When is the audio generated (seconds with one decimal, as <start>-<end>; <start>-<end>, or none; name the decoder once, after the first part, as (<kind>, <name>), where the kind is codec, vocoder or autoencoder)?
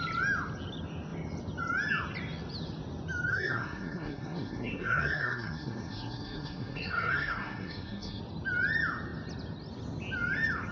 3.3-8.2 (codec, SNAC)